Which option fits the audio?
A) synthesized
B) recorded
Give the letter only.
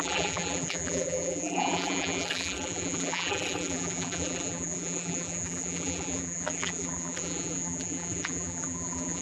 A